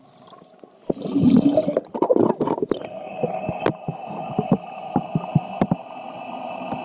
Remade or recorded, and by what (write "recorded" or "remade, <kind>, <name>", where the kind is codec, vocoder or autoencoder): recorded